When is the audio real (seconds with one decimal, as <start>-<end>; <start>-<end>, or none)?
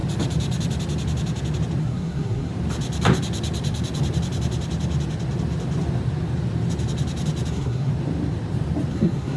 0.0-1.8; 2.5-7.5; 7.9-8.9